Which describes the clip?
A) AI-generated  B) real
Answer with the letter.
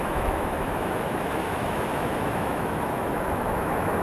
A